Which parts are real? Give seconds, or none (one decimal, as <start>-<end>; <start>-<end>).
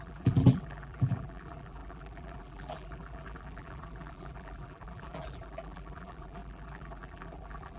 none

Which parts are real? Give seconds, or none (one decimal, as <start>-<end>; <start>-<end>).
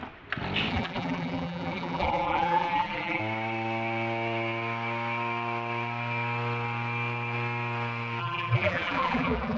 0.0-0.7; 3.2-8.2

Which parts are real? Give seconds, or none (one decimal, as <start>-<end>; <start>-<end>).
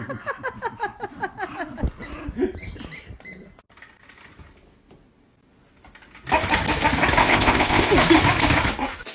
0.0-7.2; 7.9-9.1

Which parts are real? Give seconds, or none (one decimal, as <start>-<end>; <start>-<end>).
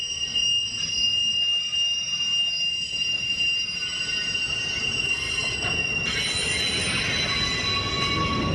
0.0-3.3; 4.8-8.5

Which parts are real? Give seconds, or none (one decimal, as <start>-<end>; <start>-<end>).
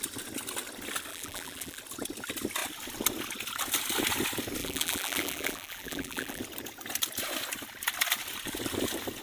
0.0-1.1; 1.8-4.6; 6.4-9.2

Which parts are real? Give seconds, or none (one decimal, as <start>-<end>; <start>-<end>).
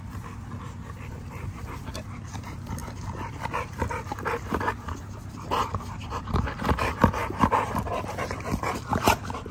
0.0-8.5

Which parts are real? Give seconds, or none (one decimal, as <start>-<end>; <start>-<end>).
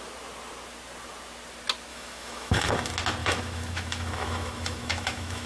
0.0-1.9; 2.7-3.2